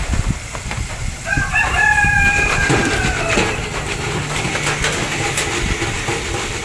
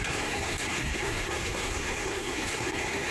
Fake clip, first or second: second